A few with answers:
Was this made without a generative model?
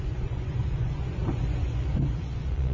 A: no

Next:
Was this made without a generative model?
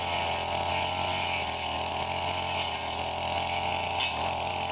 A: yes